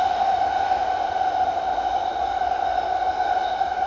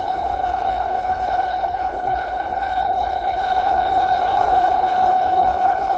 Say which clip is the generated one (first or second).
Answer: second